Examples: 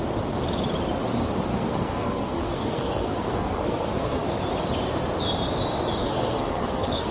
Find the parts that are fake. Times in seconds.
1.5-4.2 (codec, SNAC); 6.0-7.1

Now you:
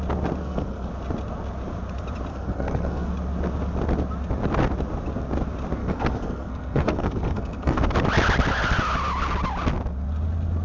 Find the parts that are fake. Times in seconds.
0.4-0.9 (codec, SNAC); 2.3-3.1; 5.8-7.8

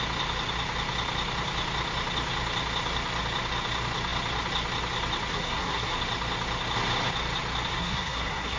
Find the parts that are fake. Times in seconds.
5.3-6.0 (codec, SNAC); 7.7-8.6